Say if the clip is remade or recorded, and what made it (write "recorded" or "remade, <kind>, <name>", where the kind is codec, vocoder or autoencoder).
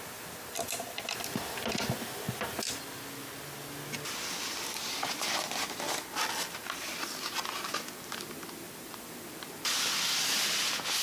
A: recorded